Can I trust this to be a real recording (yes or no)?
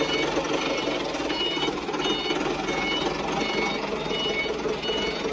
yes